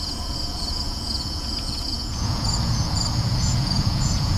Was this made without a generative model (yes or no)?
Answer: no